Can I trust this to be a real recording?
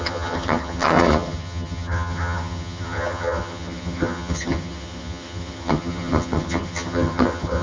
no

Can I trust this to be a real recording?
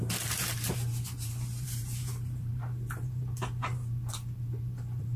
no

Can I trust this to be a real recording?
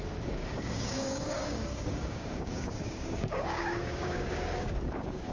no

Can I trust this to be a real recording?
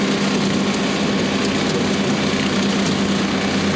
yes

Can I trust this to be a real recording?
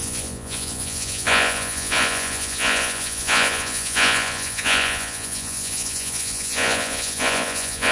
no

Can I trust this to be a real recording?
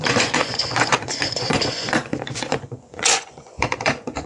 no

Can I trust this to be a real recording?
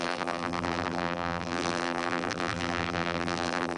no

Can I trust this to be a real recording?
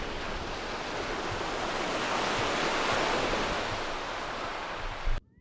yes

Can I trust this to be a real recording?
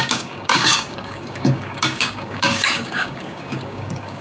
no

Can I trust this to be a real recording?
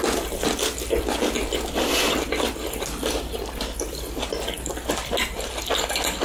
yes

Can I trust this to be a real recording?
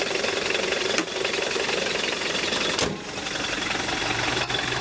yes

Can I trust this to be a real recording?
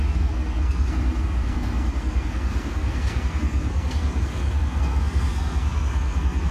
no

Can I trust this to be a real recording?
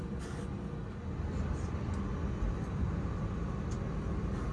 yes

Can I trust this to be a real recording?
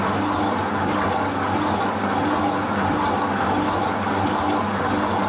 yes